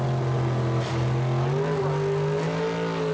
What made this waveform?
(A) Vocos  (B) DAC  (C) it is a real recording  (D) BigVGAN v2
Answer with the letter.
C